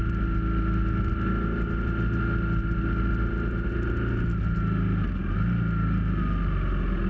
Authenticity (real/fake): real